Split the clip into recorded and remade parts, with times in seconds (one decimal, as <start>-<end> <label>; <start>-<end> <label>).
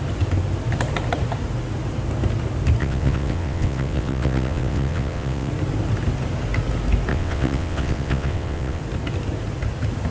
0.0-2.8 recorded; 2.8-5.5 remade; 5.5-7.1 recorded; 7.1-8.8 remade; 8.8-10.1 recorded